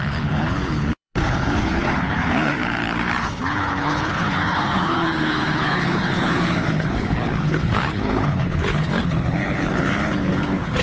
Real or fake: fake